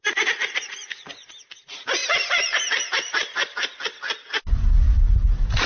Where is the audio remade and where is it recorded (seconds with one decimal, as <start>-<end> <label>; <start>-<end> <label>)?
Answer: 0.0-5.7 recorded